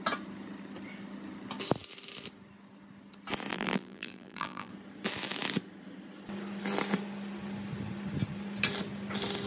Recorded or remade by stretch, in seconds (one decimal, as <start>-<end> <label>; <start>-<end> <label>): 0.0-3.5 recorded; 3.5-4.7 remade; 4.7-9.5 recorded